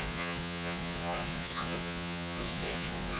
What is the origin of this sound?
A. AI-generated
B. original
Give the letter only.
A